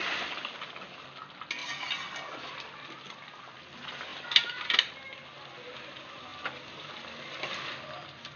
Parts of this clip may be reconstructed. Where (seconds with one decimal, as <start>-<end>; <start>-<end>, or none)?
none

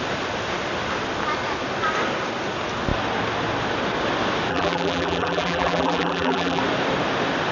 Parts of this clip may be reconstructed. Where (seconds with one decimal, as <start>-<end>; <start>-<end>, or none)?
4.5-6.6

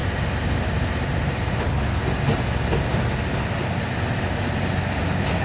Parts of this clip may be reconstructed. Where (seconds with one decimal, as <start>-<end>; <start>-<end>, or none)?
1.6-2.0

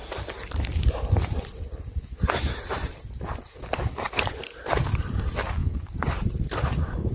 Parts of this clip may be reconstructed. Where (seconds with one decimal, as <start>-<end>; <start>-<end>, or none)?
1.6-7.1

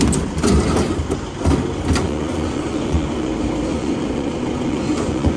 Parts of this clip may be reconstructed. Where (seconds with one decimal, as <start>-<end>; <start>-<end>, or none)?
2.0-3.3; 3.7-5.4

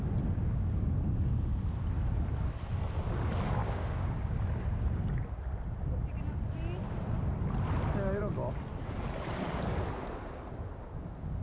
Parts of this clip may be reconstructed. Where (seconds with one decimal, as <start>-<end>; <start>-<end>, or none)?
0.4-0.9; 3.6-4.2

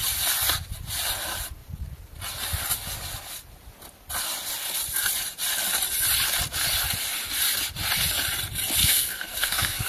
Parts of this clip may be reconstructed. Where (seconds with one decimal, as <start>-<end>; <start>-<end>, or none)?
8.8-9.9

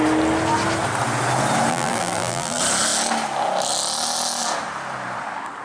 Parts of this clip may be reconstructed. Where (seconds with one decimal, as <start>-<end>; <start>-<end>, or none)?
1.7-2.6